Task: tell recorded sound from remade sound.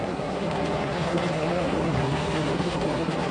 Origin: remade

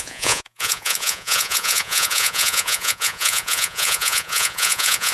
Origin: remade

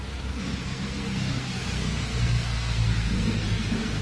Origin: remade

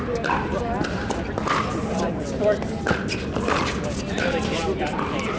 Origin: recorded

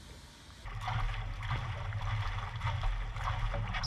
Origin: recorded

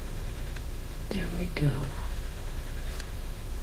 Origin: remade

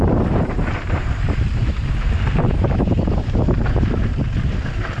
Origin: remade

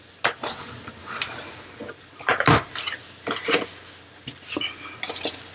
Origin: recorded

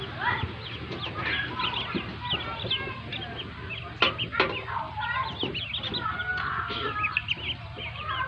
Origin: recorded